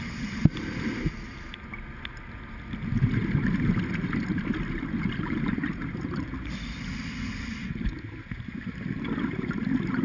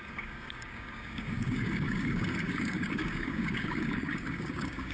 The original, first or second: first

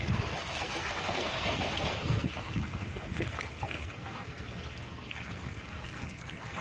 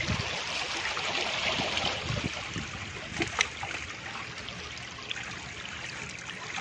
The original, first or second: second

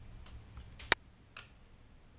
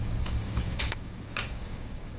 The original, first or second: first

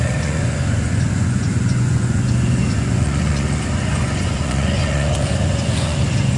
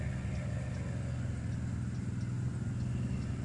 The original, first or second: second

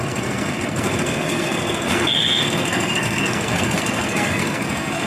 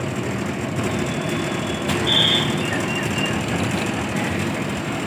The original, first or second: second